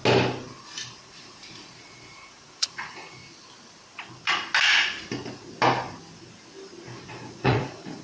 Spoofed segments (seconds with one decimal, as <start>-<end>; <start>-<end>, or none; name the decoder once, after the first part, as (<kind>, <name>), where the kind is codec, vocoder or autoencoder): 1.0-3.2 (vocoder, Vocos); 7.0-8.0